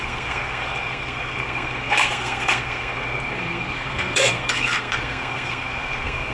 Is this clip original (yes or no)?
no